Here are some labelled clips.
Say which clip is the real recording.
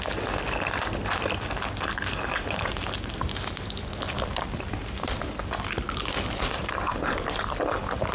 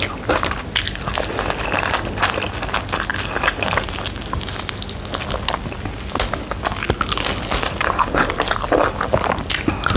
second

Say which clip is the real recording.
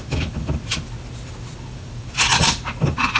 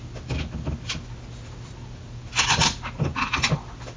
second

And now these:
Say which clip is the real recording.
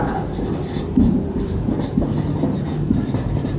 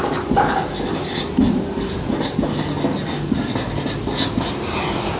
second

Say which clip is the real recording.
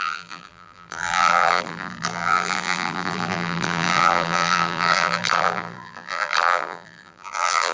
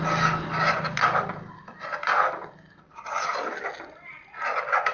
second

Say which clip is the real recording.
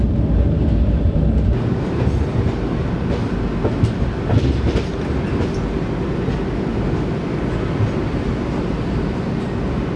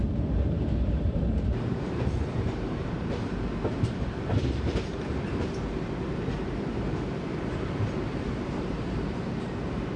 first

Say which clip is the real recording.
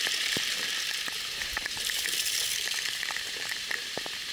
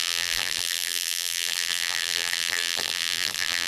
first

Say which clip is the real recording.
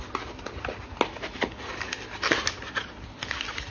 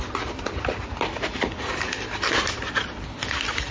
first